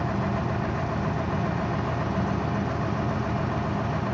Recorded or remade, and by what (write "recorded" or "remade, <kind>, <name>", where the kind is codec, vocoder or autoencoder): recorded